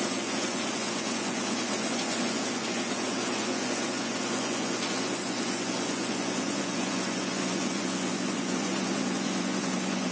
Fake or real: fake